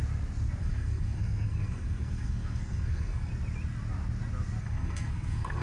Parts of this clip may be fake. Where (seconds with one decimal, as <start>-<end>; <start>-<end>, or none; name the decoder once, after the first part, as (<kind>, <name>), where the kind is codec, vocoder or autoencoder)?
0.6-3.3 (codec, SNAC); 4.6-5.6